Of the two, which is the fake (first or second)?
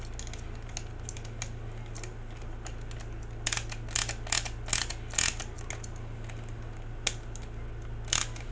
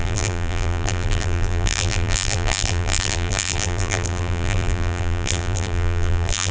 second